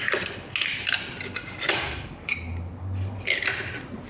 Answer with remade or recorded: recorded